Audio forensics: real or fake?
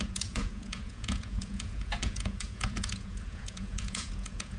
fake